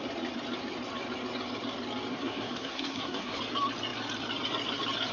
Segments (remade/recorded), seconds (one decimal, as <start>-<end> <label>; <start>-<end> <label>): 0.0-2.1 recorded; 2.1-3.4 remade; 3.4-5.1 recorded

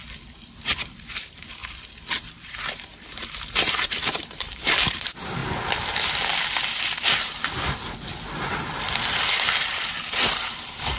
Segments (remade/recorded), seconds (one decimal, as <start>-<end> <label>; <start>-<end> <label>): 0.0-0.8 recorded; 0.8-1.6 remade; 1.6-2.3 recorded; 2.3-5.4 remade; 5.4-9.3 recorded; 9.3-11.0 remade